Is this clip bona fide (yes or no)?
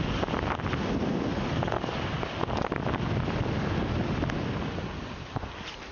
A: yes